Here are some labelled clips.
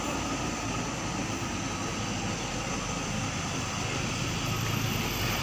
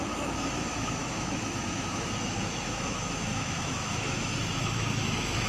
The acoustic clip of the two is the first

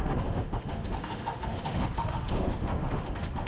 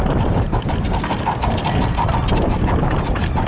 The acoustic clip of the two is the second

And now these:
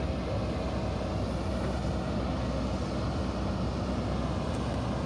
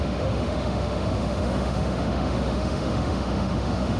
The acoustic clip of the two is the first